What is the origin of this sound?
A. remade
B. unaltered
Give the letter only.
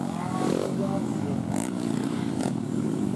A